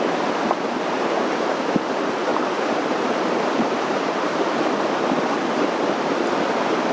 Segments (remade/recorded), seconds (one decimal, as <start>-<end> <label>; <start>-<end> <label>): 0.0-2.3 recorded; 2.3-4.4 remade; 4.4-6.9 recorded